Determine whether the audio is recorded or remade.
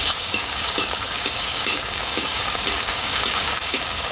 remade